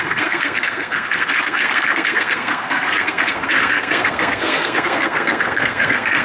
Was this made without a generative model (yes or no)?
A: no